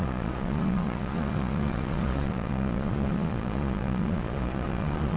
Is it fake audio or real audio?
fake